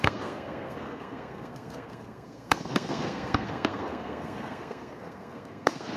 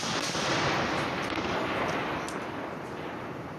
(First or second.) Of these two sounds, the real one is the second